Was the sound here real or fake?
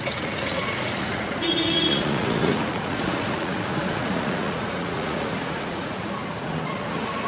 fake